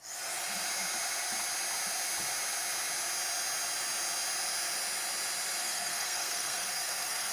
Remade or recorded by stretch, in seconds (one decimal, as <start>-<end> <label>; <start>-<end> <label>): 0.0-5.6 recorded; 5.6-7.3 remade